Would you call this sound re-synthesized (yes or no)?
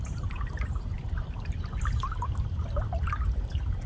no